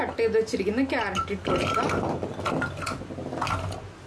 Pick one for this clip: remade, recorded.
recorded